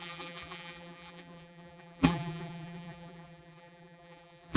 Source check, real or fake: fake